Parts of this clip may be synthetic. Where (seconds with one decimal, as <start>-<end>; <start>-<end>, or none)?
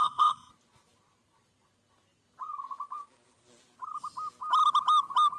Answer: 0.0-0.5